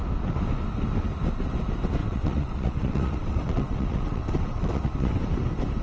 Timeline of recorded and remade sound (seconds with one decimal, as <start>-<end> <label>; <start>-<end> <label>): 0.0-2.0 recorded; 2.0-5.2 remade; 5.2-5.8 recorded